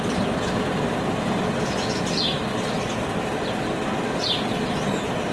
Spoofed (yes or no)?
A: no